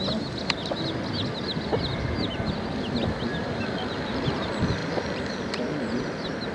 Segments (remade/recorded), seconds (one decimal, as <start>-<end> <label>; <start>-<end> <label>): 0.0-4.8 recorded; 4.8-6.5 remade